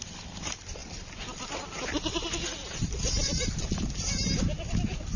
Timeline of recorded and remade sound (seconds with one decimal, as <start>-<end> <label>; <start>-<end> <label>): 0.0-5.2 recorded